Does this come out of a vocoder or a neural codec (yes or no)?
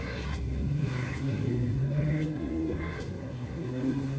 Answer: yes